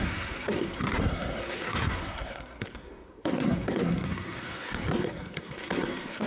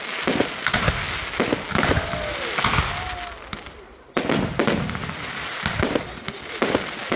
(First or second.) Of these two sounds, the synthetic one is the first